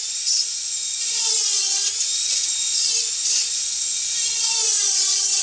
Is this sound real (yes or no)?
no